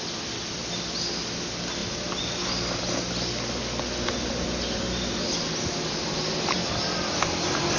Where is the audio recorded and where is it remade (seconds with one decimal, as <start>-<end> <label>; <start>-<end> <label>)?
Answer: 0.0-7.8 recorded